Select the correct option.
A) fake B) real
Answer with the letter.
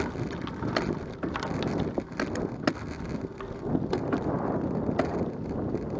B